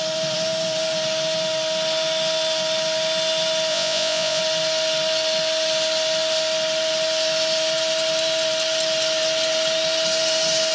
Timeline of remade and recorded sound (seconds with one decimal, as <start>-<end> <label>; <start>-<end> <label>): 0.0-3.7 recorded; 3.7-4.4 remade; 4.4-10.7 recorded